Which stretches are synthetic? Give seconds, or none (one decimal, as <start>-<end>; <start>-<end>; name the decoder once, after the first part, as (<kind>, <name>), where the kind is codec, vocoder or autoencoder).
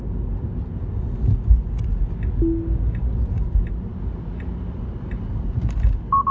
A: none